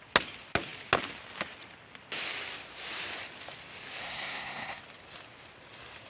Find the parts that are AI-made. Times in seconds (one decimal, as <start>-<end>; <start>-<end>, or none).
4.0-4.8